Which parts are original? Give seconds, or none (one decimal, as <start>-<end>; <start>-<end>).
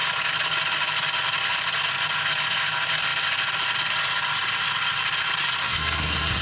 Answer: 0.0-5.6